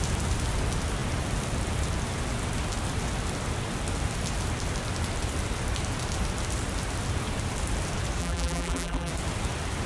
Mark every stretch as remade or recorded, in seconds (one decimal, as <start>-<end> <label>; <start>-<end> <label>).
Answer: 0.0-8.2 recorded; 8.2-9.1 remade; 9.1-9.9 recorded